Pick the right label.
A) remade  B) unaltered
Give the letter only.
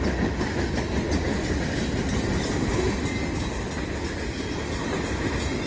B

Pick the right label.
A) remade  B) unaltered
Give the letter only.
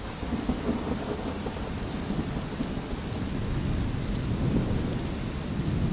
B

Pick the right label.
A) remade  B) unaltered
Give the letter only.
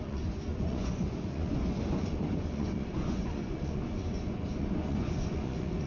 A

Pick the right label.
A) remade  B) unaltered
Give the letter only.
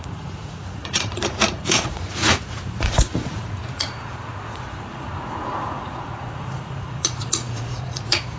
A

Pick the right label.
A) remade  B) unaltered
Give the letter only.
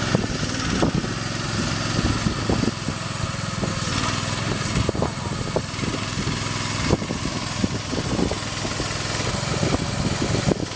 B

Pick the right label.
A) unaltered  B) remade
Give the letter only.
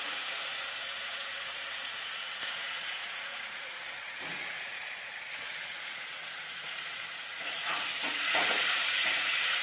B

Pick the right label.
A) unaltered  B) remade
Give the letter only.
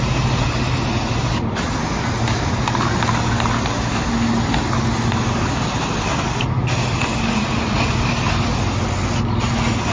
A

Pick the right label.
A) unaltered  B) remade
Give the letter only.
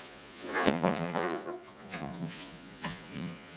B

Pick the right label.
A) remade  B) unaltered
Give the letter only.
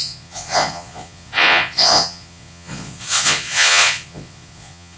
A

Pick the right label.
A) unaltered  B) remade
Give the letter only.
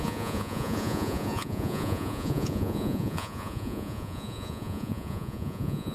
B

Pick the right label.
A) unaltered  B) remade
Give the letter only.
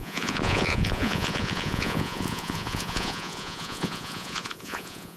B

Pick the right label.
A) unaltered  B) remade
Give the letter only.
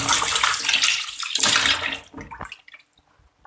A